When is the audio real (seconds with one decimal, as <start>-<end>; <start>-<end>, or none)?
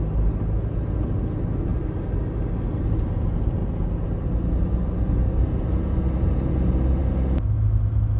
0.0-8.2